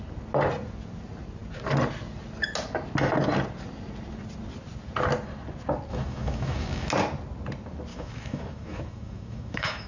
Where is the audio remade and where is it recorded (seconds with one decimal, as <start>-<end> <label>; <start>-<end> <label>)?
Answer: 0.0-5.9 recorded; 5.9-6.9 remade; 6.9-7.9 recorded; 7.9-9.9 remade